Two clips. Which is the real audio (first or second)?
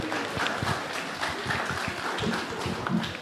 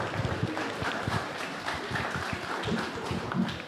first